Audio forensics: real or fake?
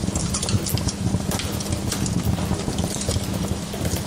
real